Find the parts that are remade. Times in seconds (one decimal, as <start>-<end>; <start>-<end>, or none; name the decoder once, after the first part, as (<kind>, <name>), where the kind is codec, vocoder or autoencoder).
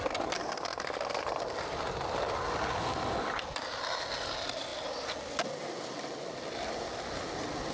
none